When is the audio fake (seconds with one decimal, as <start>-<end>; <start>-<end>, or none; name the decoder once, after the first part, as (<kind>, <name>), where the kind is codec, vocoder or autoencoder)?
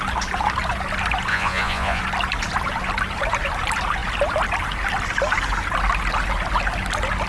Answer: 1.3-2.0 (vocoder, Vocos)